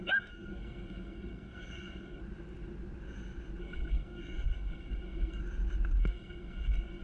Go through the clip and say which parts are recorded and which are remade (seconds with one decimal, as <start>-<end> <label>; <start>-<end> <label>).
0.0-2.2 remade; 2.2-3.6 recorded; 3.6-5.4 remade; 5.4-6.0 recorded; 6.0-7.0 remade

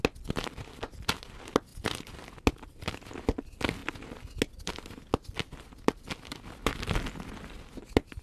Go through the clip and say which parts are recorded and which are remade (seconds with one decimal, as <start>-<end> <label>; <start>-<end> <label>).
0.0-8.2 recorded

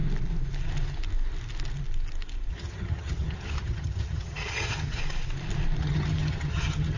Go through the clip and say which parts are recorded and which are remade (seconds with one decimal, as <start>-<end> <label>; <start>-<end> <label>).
0.0-2.5 recorded; 2.5-5.0 remade; 5.0-5.8 recorded; 5.8-7.0 remade

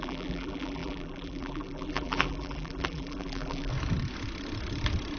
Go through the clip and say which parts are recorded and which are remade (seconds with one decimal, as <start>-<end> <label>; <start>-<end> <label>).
0.0-3.7 remade; 3.7-5.2 recorded

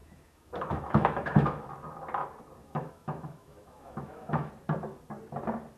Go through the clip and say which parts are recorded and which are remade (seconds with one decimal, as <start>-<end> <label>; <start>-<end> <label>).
0.0-1.6 remade; 1.6-2.6 recorded; 2.6-4.5 remade; 4.5-5.8 recorded

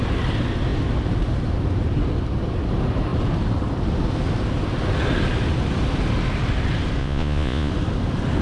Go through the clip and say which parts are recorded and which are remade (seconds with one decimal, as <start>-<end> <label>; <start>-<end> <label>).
0.0-7.0 recorded; 7.0-7.7 remade; 7.7-8.4 recorded

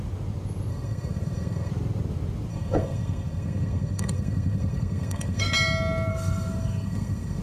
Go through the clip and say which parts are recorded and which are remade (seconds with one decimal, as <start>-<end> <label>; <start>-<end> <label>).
0.0-0.7 recorded; 0.7-1.7 remade; 1.7-2.5 recorded; 2.5-5.5 remade; 5.5-6.1 recorded; 6.1-7.4 remade